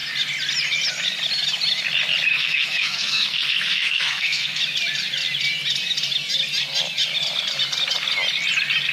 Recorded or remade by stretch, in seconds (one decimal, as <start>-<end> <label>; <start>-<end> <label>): 0.0-2.3 recorded; 2.3-4.6 remade; 4.6-8.9 recorded